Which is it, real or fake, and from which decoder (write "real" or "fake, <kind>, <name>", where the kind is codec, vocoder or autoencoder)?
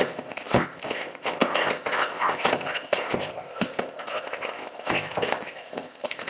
fake, codec, ZipCodec